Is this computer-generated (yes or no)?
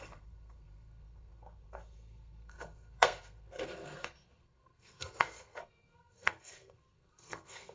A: yes